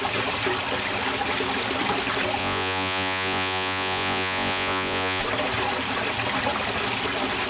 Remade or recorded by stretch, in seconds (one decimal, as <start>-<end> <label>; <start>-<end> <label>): 0.0-2.4 recorded; 2.4-5.2 remade; 5.2-7.5 recorded